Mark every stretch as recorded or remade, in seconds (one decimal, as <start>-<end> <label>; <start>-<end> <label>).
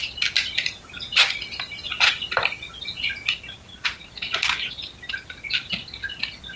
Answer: 0.0-6.6 recorded